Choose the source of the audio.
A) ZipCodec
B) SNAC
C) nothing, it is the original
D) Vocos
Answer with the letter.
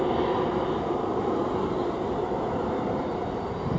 C